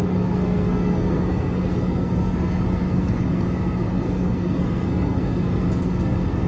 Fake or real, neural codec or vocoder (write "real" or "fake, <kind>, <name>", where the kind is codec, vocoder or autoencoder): fake, codec, SNAC